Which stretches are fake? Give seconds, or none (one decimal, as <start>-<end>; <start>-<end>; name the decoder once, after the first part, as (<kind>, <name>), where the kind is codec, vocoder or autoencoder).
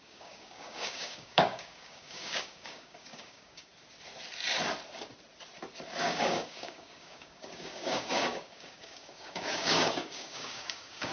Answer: 0.0-3.7 (codec, DAC); 6.0-11.1